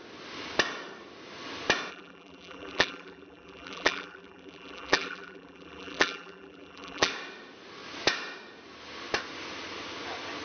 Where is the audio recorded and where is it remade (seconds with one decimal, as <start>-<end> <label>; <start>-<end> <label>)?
0.0-1.9 recorded; 1.9-7.1 remade; 7.1-10.4 recorded